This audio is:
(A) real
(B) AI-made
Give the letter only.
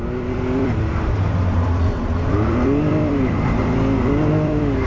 B